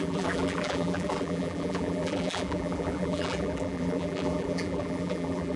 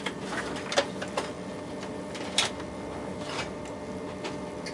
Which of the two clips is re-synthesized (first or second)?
first